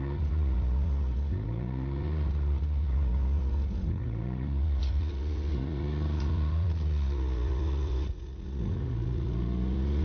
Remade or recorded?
remade